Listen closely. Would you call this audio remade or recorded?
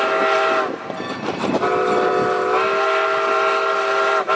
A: recorded